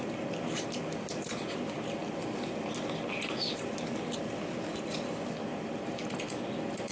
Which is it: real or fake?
real